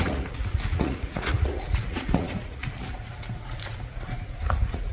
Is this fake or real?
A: fake